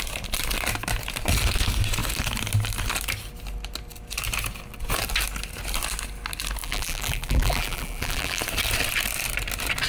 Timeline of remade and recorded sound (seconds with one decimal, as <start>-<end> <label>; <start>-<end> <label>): 0.0-6.6 recorded; 6.6-8.4 remade; 8.4-9.9 recorded